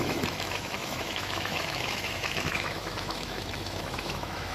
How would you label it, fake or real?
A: fake